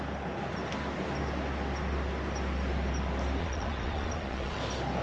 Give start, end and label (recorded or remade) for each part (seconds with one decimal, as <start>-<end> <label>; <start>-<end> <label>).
0.0-3.4 recorded; 3.4-4.6 remade; 4.6-5.0 recorded